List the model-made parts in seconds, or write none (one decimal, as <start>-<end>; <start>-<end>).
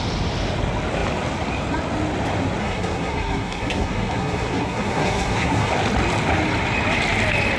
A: 2.6-5.7